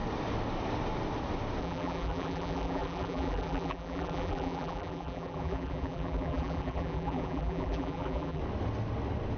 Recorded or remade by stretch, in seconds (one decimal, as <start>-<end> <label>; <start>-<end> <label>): 0.0-1.6 recorded; 1.6-8.4 remade; 8.4-9.4 recorded